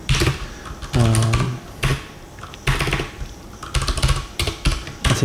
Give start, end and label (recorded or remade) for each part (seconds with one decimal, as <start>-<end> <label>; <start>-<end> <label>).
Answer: 0.0-5.2 recorded